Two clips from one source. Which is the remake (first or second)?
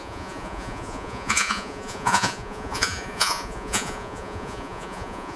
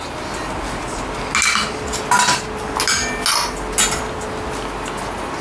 first